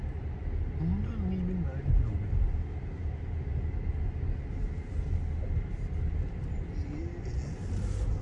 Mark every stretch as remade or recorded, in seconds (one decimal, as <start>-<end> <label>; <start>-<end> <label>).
0.0-8.2 recorded